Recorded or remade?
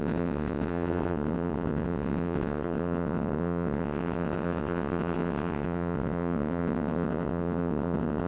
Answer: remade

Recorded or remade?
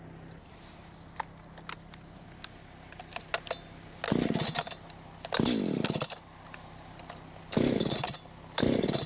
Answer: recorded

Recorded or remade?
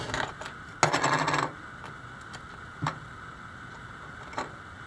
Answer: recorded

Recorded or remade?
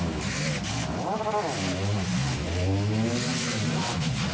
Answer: recorded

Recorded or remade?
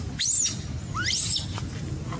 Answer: recorded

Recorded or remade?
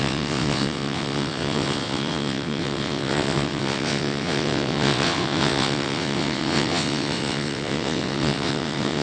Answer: remade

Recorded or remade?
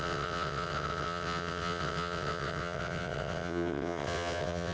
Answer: remade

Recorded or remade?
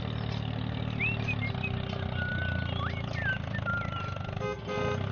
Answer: recorded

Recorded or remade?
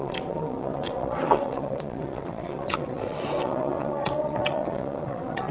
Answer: remade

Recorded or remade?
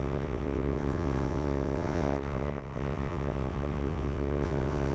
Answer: remade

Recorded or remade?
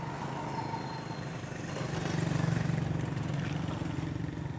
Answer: recorded